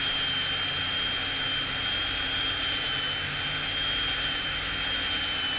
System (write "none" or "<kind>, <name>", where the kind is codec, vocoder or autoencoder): none